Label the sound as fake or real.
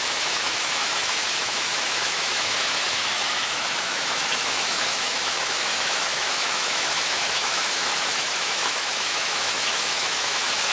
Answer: fake